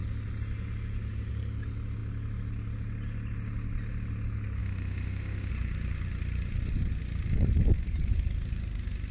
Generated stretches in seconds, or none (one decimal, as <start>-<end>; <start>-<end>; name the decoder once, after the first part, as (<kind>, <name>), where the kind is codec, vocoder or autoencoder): 4.6-5.5 (autoencoder, DAC-VAE)